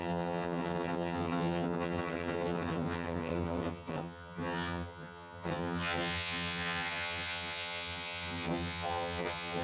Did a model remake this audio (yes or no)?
yes